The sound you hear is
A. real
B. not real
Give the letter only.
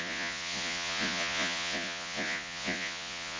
B